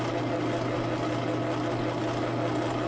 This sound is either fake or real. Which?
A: real